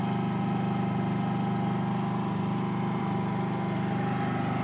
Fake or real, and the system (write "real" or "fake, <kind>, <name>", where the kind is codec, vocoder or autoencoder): real